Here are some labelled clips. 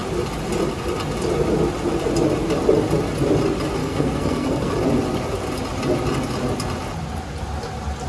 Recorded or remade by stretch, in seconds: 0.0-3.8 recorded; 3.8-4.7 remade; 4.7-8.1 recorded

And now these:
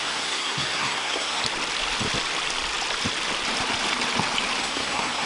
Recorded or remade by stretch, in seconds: 0.0-1.4 remade; 1.4-4.6 recorded; 4.6-5.3 remade